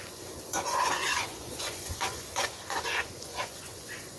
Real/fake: fake